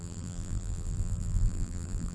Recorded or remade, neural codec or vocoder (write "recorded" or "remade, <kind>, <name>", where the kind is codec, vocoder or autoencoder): remade, vocoder, BigVGAN v2